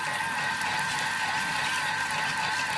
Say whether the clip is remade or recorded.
recorded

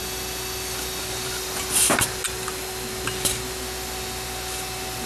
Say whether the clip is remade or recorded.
recorded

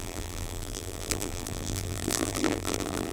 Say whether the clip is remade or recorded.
remade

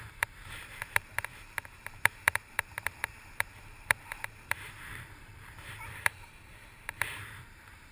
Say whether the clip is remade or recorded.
remade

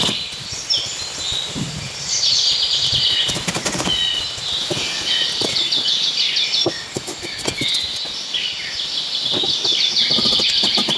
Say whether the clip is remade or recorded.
recorded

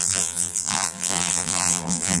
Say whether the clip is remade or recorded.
remade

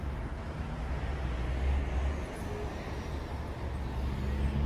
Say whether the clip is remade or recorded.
recorded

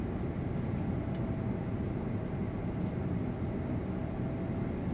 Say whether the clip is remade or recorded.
recorded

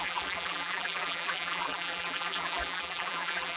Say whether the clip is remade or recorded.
remade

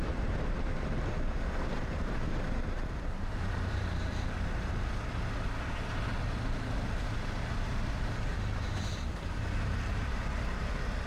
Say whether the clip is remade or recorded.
remade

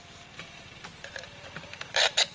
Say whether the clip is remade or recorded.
remade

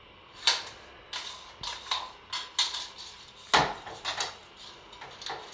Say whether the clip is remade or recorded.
recorded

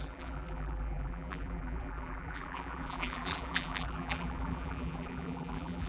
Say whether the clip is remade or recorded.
remade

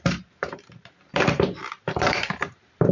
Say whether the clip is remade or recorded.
remade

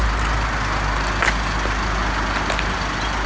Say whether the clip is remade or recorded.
recorded